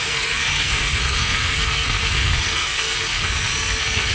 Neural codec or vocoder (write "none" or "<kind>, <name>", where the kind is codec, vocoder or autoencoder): codec, SNAC